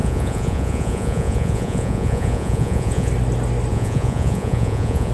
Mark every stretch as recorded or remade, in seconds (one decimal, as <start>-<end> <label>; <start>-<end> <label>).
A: 0.0-3.1 remade; 3.1-3.7 recorded; 3.7-5.1 remade